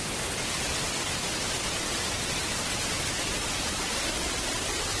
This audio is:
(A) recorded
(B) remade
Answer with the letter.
A